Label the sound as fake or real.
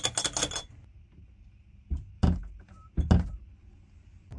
real